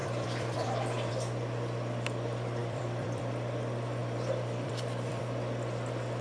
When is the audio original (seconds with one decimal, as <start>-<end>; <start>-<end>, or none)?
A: 1.1-2.6; 3.2-4.0; 5.2-6.2

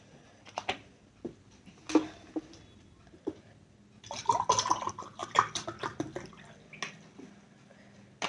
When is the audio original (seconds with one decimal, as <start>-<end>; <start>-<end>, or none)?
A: 0.0-8.3

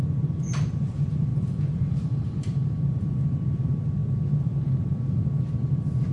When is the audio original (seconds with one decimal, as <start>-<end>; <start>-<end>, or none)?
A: 0.0-1.3; 2.3-6.1

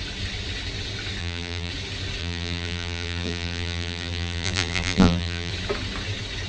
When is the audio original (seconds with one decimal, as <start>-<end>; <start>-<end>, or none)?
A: 0.0-1.2; 1.7-2.2; 5.5-6.5

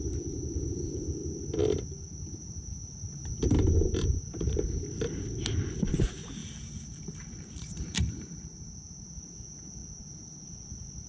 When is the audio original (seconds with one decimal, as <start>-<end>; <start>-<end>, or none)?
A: 0.0-6.4; 8.7-11.1

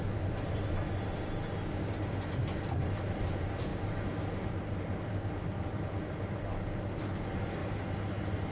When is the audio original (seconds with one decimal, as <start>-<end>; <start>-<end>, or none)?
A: 0.0-3.7; 6.0-8.5

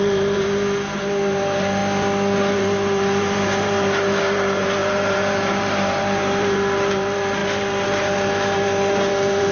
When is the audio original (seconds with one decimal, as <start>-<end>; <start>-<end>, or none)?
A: 1.8-2.5